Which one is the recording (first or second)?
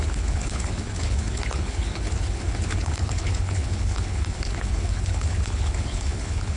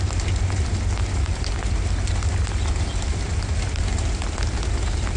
second